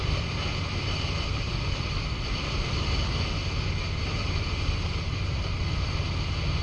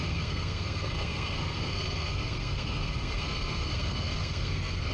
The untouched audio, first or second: first